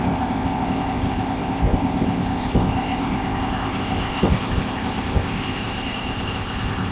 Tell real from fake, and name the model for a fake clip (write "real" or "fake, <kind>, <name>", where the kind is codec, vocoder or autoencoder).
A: fake, codec, ZipCodec